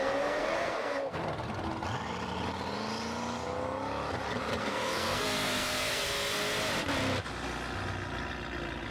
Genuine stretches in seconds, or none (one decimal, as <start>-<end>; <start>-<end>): 1.2-4.6; 6.5-8.9